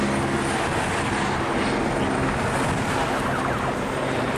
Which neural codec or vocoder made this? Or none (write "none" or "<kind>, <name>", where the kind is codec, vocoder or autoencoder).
none